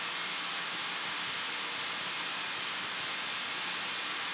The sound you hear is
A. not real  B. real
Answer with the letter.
B